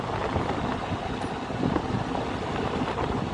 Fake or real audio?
real